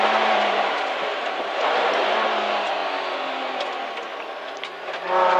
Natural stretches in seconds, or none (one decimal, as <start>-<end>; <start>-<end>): 2.8-5.4